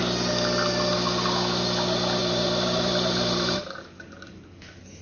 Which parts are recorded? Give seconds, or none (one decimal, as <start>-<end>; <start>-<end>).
0.0-2.2; 3.6-5.0